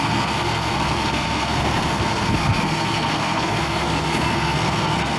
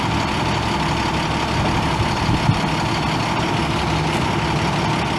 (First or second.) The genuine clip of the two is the second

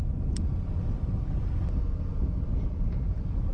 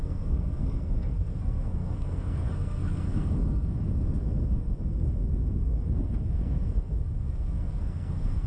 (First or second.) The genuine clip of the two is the first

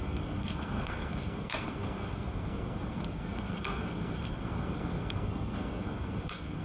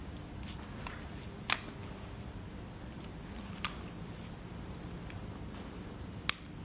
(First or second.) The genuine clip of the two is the second